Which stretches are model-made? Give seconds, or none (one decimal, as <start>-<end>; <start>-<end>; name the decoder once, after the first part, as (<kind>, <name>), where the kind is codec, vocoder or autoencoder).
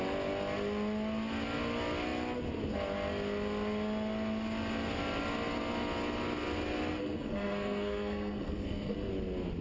6.9-9.1 (codec, SNAC)